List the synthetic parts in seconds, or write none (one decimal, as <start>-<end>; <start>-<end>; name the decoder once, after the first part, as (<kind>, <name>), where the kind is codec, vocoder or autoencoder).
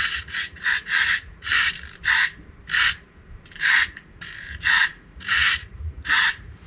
0.0-1.5 (vocoder, Vocos); 3.6-6.7